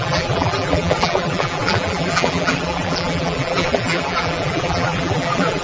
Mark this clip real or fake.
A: fake